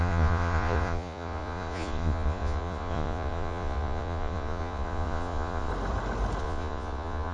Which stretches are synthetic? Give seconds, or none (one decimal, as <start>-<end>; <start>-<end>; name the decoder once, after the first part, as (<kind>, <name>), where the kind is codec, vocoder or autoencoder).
0.0-5.7 (vocoder, Vocos); 6.4-7.3